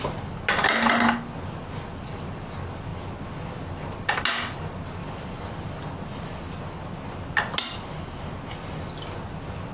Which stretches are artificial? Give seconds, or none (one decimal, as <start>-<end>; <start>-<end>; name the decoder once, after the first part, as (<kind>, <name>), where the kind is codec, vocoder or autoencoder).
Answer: 5.0-5.7 (vocoder, BigVGAN v2)